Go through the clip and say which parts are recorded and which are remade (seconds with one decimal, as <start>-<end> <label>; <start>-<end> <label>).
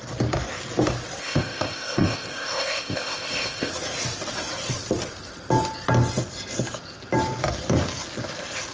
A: 0.0-1.2 recorded; 1.2-3.7 remade; 3.7-8.7 recorded